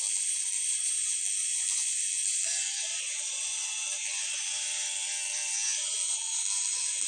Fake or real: real